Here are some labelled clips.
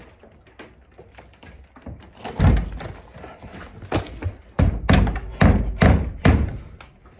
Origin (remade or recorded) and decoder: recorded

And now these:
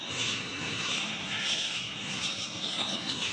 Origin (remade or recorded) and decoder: remade, codec, SNAC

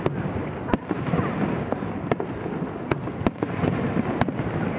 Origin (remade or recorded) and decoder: recorded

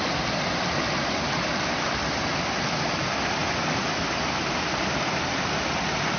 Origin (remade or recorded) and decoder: recorded